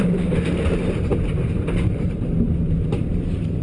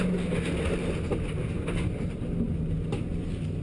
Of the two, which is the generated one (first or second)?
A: first